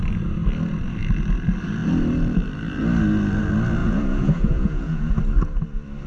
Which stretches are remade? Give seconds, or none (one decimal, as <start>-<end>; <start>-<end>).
3.8-5.1